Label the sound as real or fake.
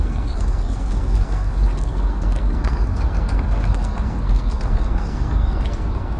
fake